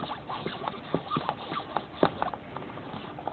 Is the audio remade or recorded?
recorded